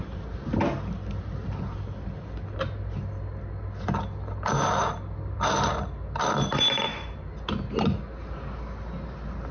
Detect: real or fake real